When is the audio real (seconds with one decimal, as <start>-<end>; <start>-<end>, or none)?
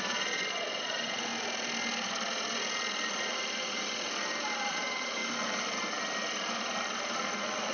1.3-4.7; 5.2-7.7